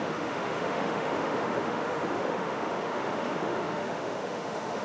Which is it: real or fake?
fake